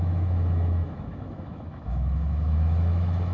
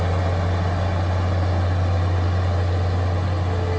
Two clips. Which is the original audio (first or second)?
second